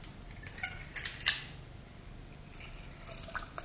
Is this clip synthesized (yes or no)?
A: no